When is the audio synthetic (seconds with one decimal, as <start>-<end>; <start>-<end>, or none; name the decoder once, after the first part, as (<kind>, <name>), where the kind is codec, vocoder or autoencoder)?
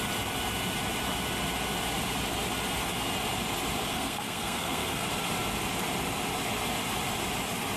3.9-5.1 (codec, SNAC)